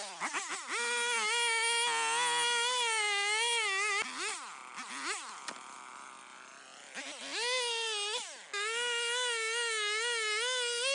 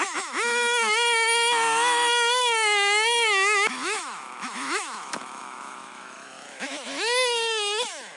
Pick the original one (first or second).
first